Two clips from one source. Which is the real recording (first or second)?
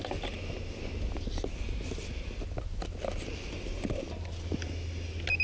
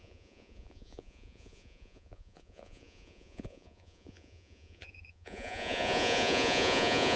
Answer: first